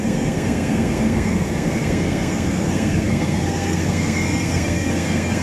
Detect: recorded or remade remade